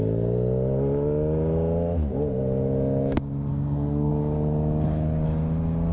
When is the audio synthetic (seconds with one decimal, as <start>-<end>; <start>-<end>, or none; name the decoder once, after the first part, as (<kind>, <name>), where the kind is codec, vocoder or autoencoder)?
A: 3.5-4.1 (codec, SNAC)